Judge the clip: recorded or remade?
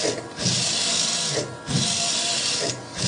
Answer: recorded